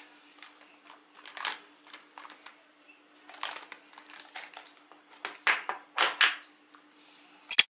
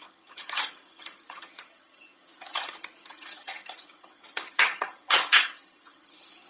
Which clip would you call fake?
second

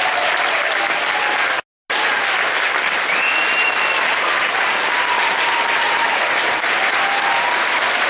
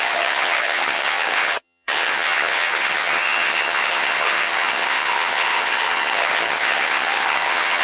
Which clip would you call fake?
second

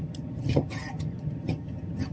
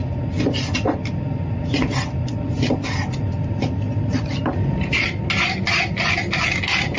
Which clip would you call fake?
first